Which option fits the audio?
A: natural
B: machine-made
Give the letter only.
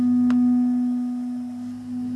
A